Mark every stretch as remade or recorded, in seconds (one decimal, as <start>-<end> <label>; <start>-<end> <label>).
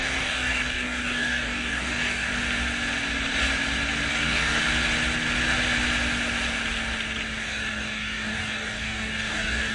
0.0-2.3 remade; 2.3-4.1 recorded; 4.1-4.6 remade; 4.6-7.4 recorded; 7.4-9.7 remade